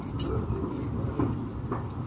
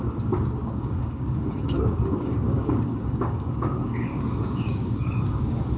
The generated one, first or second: second